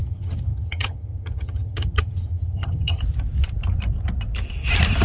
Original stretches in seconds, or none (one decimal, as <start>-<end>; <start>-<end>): 3.0-5.0